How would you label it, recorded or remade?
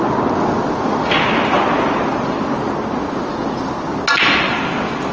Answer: recorded